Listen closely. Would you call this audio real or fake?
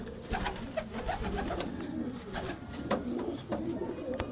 real